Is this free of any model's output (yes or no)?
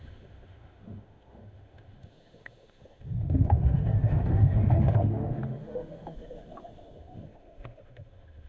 no